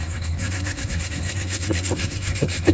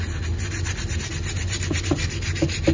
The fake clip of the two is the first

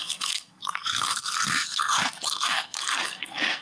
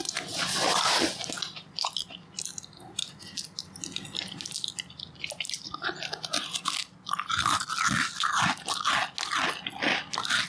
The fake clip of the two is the first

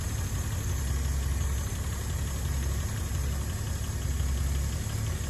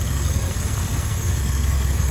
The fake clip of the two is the second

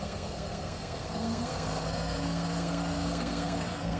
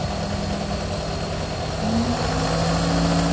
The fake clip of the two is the first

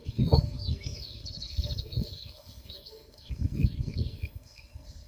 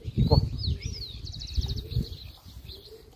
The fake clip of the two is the first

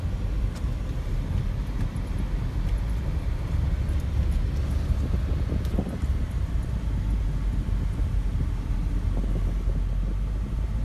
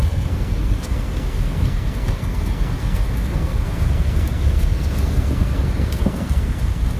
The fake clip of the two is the second